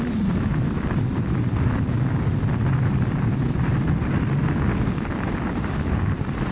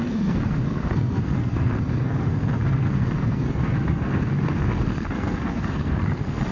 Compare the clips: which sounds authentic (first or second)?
first